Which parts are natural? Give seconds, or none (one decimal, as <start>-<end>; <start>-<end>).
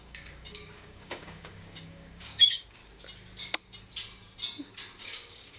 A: 2.8-5.0